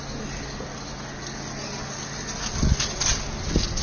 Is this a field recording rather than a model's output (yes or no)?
yes